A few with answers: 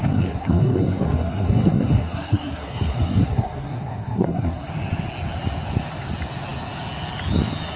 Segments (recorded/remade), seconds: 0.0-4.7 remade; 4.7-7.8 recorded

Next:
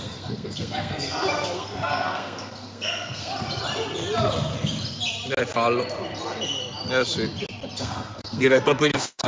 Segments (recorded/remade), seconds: 0.0-3.3 remade; 3.3-7.8 recorded; 7.8-9.3 remade